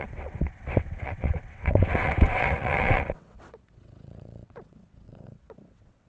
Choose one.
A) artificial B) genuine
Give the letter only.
A